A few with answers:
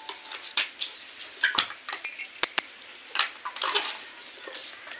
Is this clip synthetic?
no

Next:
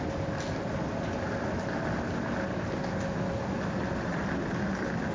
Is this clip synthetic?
no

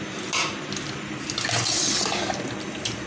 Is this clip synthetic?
no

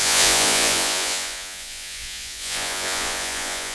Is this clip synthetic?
yes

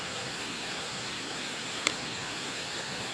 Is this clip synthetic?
yes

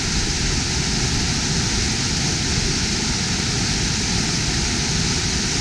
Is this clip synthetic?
no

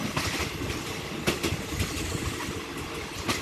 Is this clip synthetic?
no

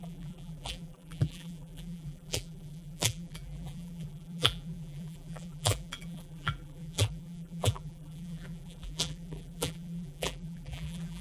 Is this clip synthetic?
yes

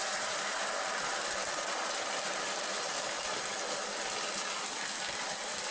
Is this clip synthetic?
no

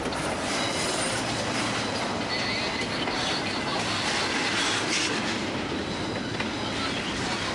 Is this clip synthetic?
no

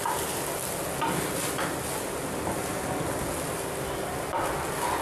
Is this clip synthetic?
no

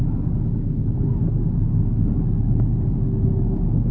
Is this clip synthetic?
no